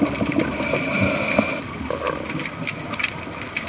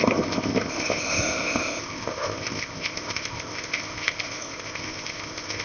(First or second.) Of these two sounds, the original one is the first